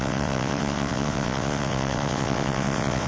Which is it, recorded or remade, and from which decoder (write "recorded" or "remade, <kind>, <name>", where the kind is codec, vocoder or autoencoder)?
remade, vocoder, WaveNeXt